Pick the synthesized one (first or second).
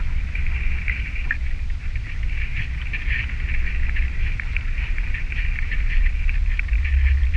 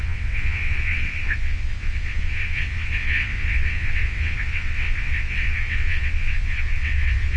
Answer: second